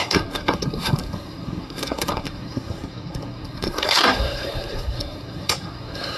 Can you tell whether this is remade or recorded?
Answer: remade